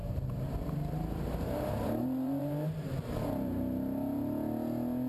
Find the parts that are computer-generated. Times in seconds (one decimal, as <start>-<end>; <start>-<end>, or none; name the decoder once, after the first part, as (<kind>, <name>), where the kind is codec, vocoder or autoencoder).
0.0-3.1 (vocoder, BigVGAN v2)